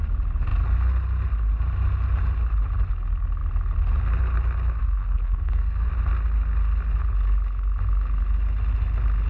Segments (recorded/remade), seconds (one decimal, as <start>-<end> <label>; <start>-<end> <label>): 0.0-4.8 recorded; 4.8-5.9 remade; 5.9-9.3 recorded

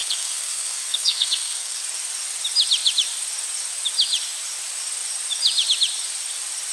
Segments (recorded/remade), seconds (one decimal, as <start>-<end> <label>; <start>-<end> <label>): 0.0-1.8 remade; 1.8-6.7 recorded

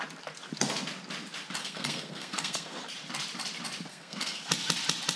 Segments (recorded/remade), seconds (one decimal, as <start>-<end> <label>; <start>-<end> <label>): 0.0-1.6 recorded; 1.6-2.8 remade; 2.8-3.9 recorded; 3.9-4.5 remade; 4.5-5.2 recorded

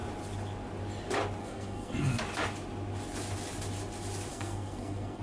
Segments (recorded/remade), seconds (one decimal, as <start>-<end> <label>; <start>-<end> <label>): 0.0-1.4 recorded; 1.4-2.2 remade; 2.2-4.3 recorded; 4.3-5.2 remade

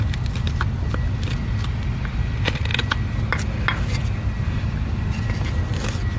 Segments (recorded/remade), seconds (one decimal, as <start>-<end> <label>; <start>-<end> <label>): 0.0-6.2 recorded

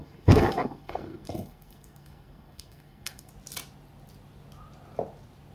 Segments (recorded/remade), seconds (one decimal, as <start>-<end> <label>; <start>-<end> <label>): 0.0-3.3 remade; 3.3-5.5 recorded

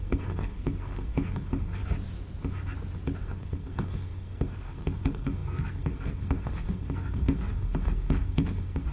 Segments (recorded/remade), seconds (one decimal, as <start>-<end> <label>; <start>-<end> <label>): 0.0-1.8 remade; 1.8-3.2 recorded; 3.2-8.9 remade

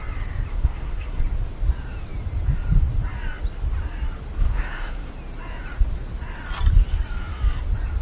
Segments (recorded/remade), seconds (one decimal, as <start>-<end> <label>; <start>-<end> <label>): 0.0-0.5 recorded; 0.5-1.2 remade; 1.2-4.4 recorded; 4.4-5.1 remade; 5.1-8.0 recorded